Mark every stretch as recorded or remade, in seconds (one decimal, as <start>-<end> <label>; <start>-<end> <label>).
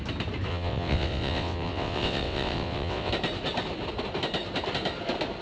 0.0-0.5 recorded; 0.5-3.1 remade; 3.1-5.4 recorded